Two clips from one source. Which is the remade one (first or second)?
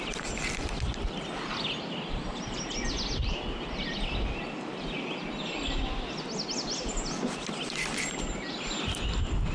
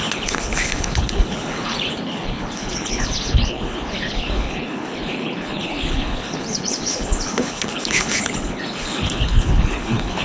second